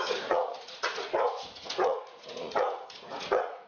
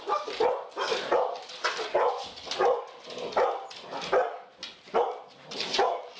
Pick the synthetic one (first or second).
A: first